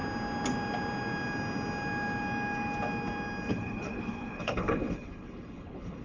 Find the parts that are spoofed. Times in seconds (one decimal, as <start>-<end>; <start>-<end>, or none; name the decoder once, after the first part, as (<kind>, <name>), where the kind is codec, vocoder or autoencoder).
3.5-6.0 (codec, HILCodec)